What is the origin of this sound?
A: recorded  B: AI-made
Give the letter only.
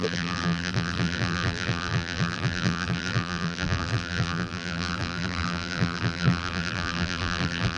B